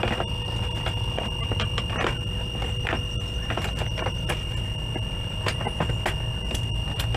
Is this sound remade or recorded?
recorded